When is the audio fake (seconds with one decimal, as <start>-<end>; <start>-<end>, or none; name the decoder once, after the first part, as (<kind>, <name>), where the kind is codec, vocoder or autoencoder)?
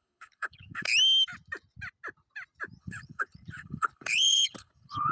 0.0-0.9 (codec, HILCodec); 2.8-5.1